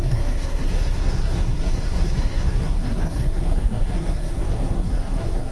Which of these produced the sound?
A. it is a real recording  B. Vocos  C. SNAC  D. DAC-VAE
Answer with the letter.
C